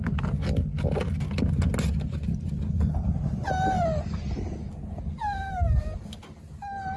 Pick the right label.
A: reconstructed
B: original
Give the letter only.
B